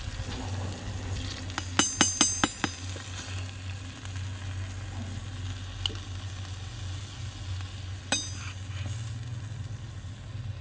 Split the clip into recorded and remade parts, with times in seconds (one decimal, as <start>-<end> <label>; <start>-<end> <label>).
0.0-10.6 recorded